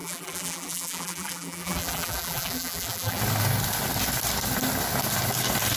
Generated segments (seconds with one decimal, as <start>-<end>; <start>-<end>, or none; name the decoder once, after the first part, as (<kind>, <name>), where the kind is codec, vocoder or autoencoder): 0.0-3.2 (vocoder, BigVGAN v2)